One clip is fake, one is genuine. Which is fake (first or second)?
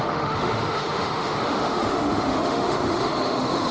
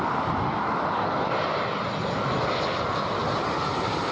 first